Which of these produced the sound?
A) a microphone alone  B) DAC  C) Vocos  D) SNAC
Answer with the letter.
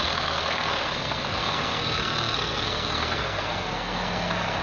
D